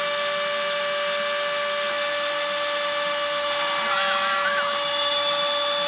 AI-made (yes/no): no